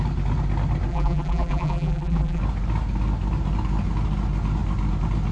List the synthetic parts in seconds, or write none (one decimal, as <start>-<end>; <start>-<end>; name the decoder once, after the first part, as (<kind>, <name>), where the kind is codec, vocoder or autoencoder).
0.9-2.4 (vocoder, BigVGAN v2)